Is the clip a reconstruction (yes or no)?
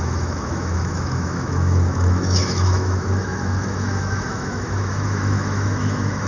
yes